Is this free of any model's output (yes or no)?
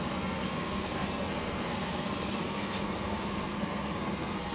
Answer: no